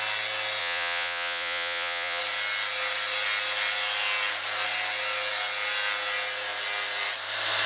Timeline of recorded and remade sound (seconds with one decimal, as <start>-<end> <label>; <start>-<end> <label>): 0.0-0.6 recorded; 0.6-2.2 remade; 2.2-7.7 recorded